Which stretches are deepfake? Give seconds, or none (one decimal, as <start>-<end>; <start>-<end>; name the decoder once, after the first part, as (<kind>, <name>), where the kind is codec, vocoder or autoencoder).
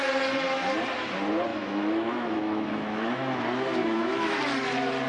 1.5-3.4 (autoencoder, DAC-VAE); 3.8-4.4